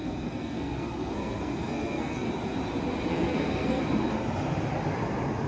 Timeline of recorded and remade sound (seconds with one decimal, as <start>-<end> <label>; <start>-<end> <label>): 0.0-2.3 remade; 2.3-3.1 recorded; 3.1-3.8 remade; 3.8-5.5 recorded